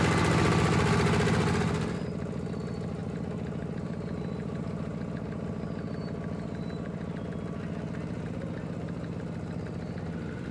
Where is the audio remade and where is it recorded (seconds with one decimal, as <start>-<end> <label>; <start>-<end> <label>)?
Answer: 0.0-10.5 recorded

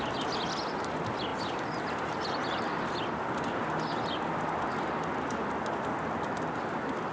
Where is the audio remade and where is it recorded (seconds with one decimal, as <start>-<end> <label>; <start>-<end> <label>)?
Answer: 0.0-7.1 recorded

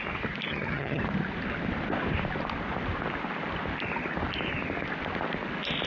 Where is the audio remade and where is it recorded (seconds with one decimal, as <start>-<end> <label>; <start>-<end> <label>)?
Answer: 0.0-0.5 recorded; 0.5-1.0 remade; 1.0-5.9 recorded

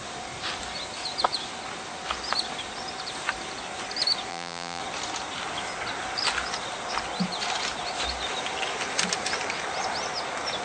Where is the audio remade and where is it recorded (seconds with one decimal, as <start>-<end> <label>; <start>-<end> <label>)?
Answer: 0.0-4.3 recorded; 4.3-4.8 remade; 4.8-10.6 recorded

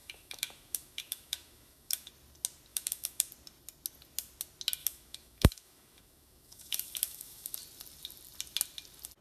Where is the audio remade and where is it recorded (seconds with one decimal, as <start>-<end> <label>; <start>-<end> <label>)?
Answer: 0.0-2.1 remade; 2.1-2.7 recorded; 2.7-3.3 remade; 3.3-4.8 recorded; 4.8-7.6 remade; 7.6-9.2 recorded

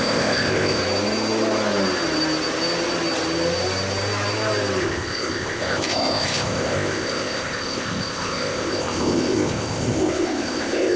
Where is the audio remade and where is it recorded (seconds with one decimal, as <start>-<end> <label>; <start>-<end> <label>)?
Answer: 0.0-0.8 remade; 0.8-4.8 recorded; 4.8-11.0 remade

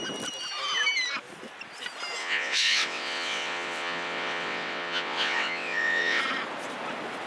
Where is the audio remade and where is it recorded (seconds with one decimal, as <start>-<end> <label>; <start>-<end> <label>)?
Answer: 0.0-2.2 recorded; 2.2-6.2 remade; 6.2-7.3 recorded

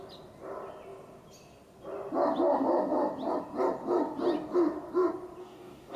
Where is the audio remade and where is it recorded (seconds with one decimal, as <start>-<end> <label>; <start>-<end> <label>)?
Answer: 0.0-5.4 recorded; 5.4-6.0 remade